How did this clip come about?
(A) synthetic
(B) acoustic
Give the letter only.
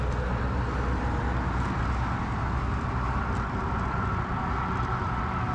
B